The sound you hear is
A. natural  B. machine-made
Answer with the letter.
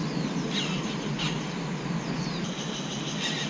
A